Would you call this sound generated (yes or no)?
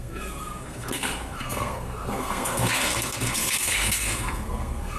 yes